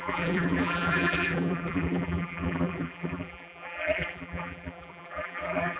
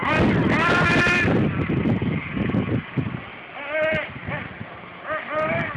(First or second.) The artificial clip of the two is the first